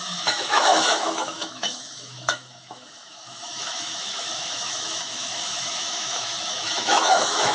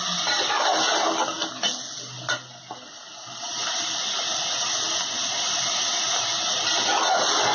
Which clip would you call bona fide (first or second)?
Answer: second